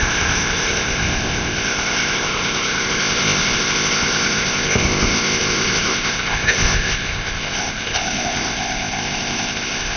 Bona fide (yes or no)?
no